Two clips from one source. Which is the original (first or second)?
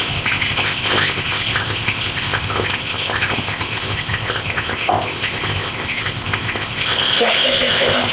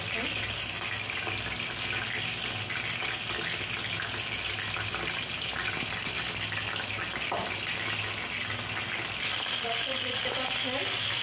second